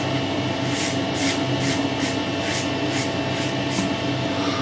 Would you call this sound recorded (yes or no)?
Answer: yes